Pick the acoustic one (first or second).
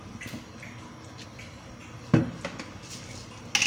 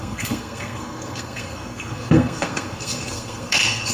first